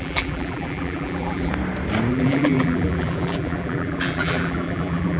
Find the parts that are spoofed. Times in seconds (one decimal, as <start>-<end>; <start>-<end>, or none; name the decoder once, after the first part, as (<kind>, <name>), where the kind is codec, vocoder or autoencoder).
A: 0.0-1.5 (vocoder, BigVGAN v2); 2.1-5.2